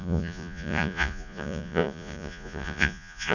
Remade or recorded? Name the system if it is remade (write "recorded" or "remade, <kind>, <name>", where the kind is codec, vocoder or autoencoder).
remade, vocoder, Vocos